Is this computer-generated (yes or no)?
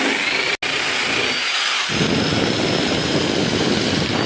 no